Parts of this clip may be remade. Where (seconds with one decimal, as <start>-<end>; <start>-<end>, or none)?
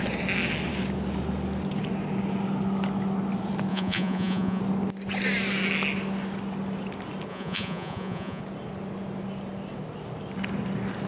3.7-4.6; 7.3-8.4